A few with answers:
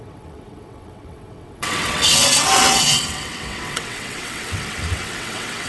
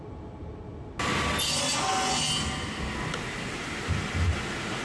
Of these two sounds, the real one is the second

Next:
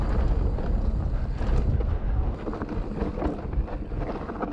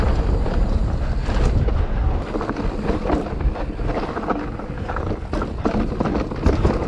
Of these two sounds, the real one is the first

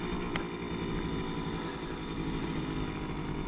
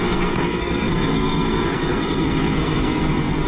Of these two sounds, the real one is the first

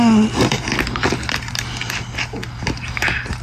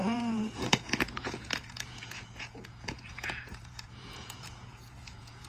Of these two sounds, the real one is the first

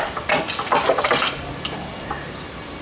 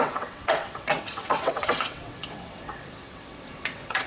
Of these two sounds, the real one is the first